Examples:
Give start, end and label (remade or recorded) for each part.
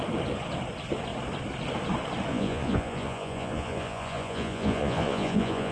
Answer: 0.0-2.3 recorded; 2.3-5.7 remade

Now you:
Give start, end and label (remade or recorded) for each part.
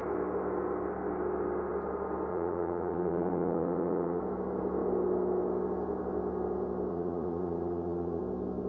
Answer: 0.0-2.3 recorded; 2.3-4.2 remade; 4.2-6.9 recorded; 6.9-8.2 remade; 8.2-8.7 recorded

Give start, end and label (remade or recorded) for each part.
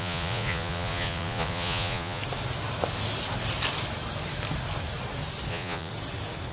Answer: 0.0-2.2 remade; 2.2-5.5 recorded; 5.5-5.9 remade; 5.9-6.5 recorded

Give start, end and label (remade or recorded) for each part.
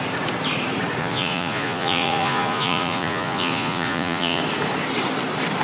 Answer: 0.0-1.0 recorded; 1.0-4.4 remade; 4.4-5.6 recorded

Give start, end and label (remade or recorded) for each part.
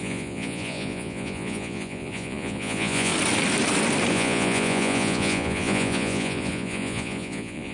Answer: 0.0-3.1 remade; 3.1-4.1 recorded; 4.1-7.7 remade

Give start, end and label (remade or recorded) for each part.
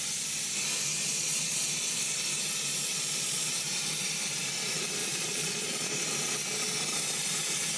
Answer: 0.0-1.1 recorded; 1.1-2.0 remade; 2.0-2.9 recorded; 2.9-3.6 remade; 3.6-5.0 recorded; 5.0-6.1 remade; 6.1-7.8 recorded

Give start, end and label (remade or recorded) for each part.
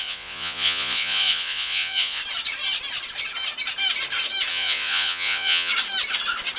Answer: 0.0-2.2 remade; 2.2-4.5 recorded; 4.5-5.7 remade; 5.7-6.6 recorded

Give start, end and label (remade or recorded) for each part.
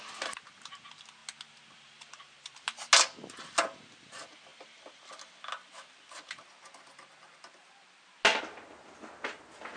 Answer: 0.0-9.8 recorded